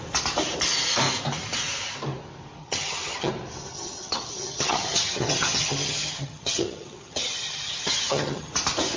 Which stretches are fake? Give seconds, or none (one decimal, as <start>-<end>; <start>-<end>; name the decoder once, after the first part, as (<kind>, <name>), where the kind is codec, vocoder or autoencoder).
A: 2.6-3.3 (vocoder, HiFi-GAN); 3.7-8.5